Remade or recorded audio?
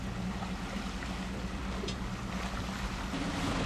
recorded